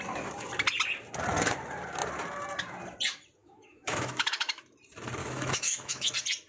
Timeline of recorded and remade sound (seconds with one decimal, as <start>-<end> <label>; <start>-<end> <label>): 0.0-3.4 recorded; 3.4-4.6 remade; 4.6-5.2 recorded; 5.2-6.1 remade; 6.1-6.5 recorded